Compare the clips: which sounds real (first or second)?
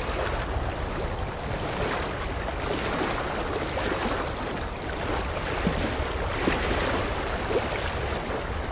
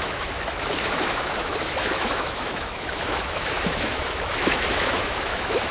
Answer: first